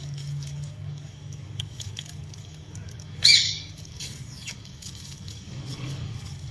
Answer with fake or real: fake